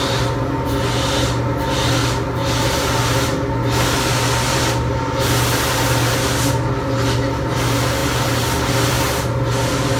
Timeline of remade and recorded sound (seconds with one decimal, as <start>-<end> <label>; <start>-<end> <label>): 0.0-10.0 recorded